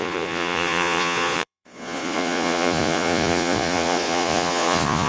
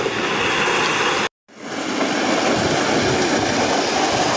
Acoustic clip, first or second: second